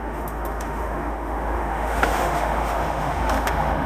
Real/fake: fake